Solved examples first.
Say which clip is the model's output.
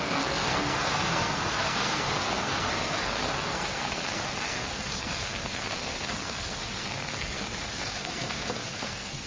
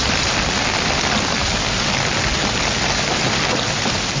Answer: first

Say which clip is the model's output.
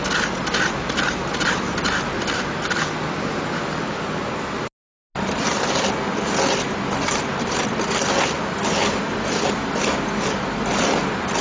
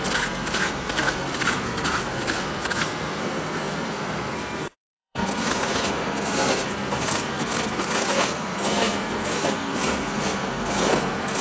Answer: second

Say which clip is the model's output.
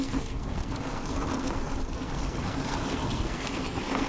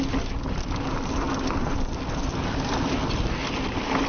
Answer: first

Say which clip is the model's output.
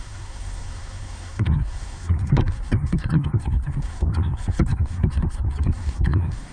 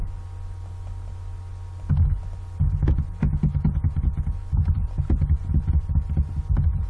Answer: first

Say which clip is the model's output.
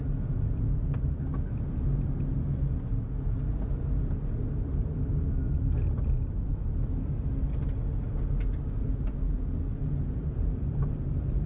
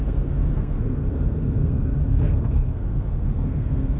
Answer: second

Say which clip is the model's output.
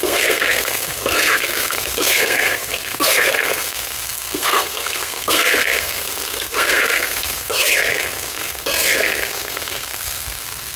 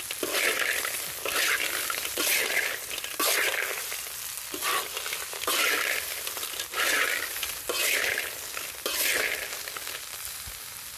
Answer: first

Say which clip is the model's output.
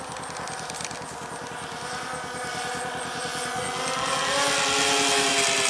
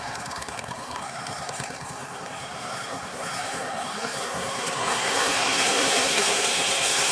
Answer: second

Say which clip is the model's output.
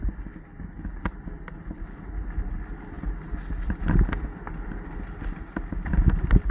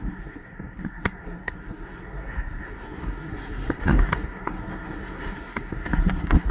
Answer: second